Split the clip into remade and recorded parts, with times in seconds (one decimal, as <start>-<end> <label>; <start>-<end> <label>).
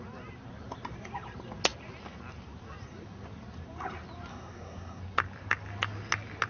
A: 0.0-4.3 recorded; 4.3-5.0 remade; 5.0-6.5 recorded